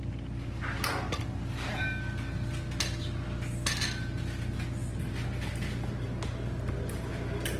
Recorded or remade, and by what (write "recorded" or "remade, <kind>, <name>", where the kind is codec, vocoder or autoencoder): recorded